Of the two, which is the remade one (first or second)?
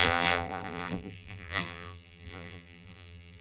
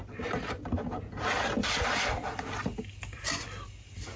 first